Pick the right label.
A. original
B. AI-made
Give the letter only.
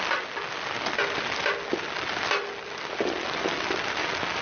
A